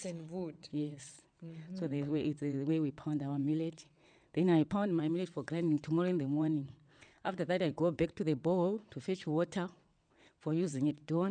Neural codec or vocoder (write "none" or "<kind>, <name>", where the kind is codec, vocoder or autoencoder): vocoder, WaveNeXt